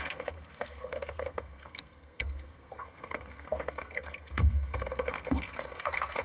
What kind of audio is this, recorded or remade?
remade